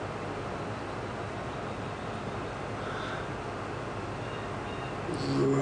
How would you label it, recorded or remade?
recorded